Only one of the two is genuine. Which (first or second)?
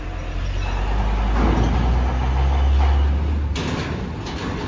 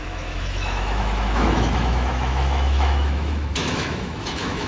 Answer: first